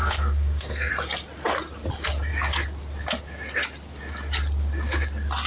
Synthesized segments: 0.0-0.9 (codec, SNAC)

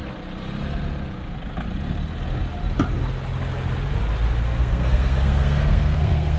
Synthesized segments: 4.6-6.4 (codec, SNAC)

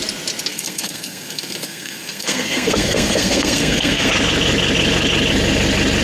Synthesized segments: 0.5-4.1 (codec, SNAC)